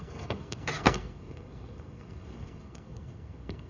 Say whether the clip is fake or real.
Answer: fake